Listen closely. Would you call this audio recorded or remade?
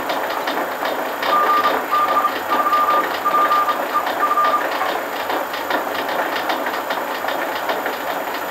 recorded